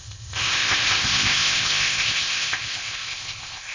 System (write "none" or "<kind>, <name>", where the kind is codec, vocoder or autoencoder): codec, ZipCodec